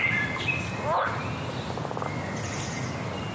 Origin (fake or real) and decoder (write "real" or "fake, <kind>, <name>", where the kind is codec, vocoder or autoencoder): real